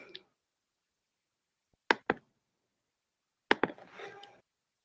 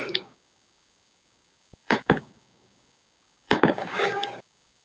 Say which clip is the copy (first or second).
second